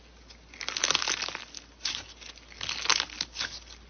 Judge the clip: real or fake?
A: real